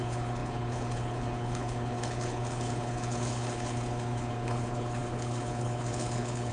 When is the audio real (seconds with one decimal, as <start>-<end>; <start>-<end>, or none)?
none